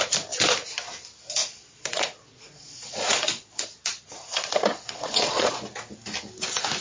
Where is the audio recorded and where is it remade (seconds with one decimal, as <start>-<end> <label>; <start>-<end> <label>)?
0.0-1.4 recorded; 1.4-5.5 remade; 5.5-6.8 recorded